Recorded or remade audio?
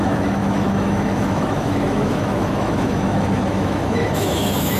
remade